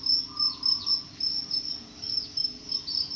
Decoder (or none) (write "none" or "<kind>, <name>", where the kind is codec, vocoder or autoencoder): none